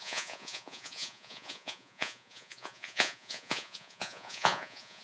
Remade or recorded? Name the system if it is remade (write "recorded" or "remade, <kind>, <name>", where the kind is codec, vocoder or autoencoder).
remade, vocoder, Vocos